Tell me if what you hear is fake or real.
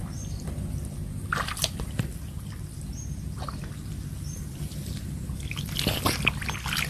real